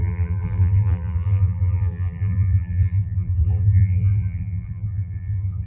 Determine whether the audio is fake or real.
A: fake